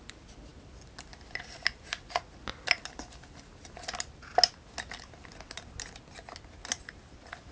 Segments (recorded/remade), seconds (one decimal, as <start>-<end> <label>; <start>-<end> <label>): 0.0-7.5 recorded